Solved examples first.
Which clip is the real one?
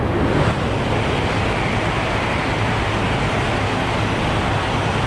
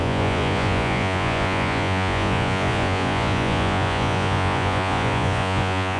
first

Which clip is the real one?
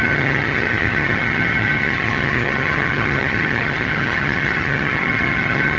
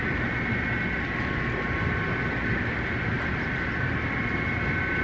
second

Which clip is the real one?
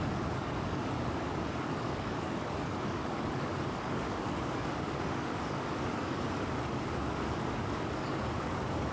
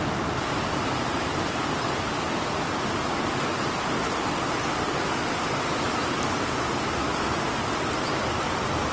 second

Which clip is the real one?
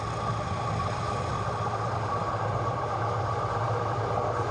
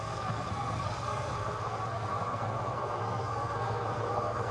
first